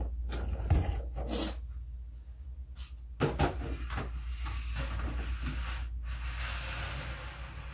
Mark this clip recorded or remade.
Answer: recorded